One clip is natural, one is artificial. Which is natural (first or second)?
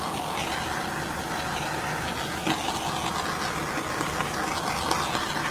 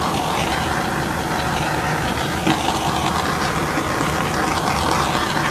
first